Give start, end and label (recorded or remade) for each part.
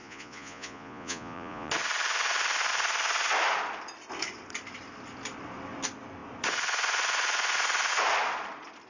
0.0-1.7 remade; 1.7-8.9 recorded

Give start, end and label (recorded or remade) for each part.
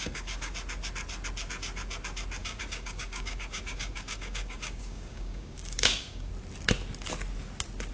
0.0-0.5 remade; 0.5-2.4 recorded; 2.4-6.3 remade; 6.3-7.9 recorded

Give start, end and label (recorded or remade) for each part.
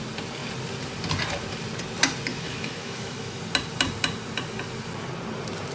0.0-2.3 recorded; 2.3-3.4 remade; 3.4-5.7 recorded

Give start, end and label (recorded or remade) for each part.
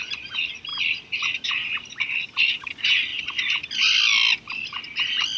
0.0-5.4 recorded